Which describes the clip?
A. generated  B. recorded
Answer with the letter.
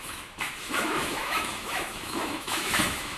A